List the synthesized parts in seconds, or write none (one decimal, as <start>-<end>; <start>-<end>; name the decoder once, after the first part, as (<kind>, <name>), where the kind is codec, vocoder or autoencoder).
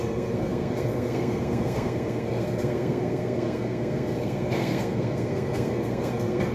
0.0-6.5 (codec, SNAC)